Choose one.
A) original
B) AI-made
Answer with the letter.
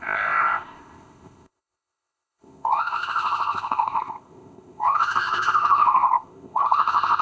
B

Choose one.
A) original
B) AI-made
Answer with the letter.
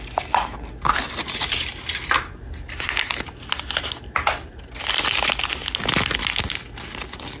A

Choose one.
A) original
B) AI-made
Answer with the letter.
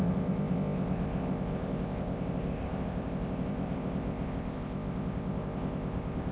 B